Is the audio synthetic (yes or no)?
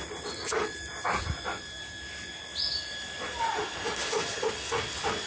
no